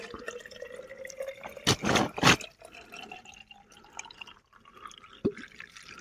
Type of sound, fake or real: real